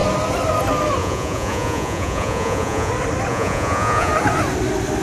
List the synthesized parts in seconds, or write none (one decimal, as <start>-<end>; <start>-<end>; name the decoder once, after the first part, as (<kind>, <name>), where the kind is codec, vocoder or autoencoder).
1.0-2.9 (vocoder, Vocos); 3.3-4.1